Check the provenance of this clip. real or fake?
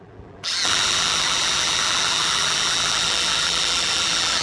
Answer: fake